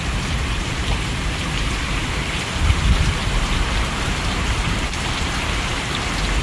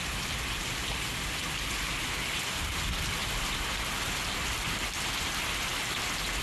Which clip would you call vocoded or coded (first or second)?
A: first